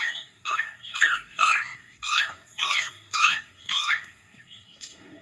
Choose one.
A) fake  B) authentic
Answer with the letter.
A